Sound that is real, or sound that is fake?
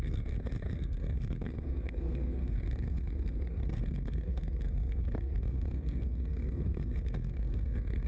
fake